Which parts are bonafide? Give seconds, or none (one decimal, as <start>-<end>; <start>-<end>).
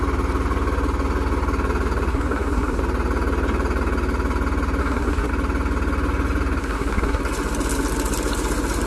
0.0-2.1; 2.8-4.8; 5.3-6.6; 7.2-8.9